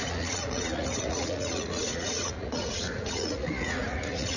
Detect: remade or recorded remade